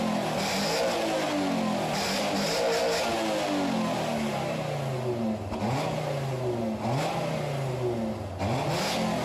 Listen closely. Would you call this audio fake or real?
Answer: real